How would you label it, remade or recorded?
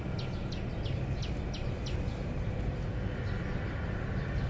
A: recorded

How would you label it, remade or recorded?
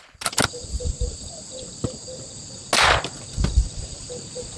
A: recorded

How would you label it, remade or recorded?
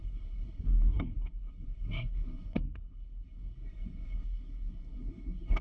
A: remade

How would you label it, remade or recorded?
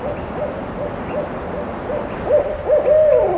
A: recorded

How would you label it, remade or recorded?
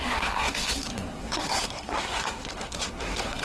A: remade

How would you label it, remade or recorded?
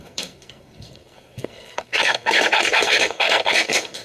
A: remade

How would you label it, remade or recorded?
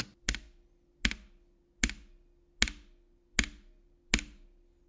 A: recorded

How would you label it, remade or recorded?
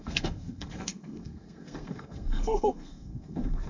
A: remade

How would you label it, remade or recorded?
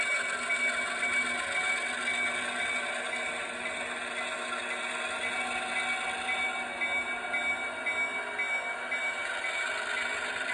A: recorded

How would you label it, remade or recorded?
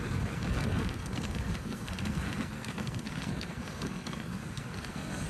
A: remade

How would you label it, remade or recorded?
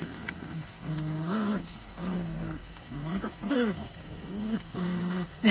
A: remade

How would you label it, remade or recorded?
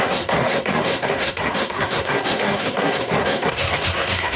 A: remade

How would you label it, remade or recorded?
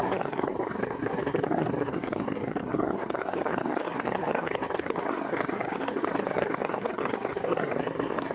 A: remade